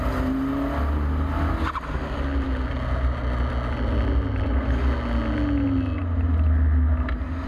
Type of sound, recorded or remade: recorded